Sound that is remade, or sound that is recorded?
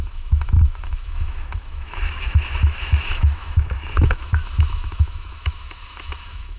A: remade